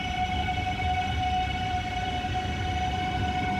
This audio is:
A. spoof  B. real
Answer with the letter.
B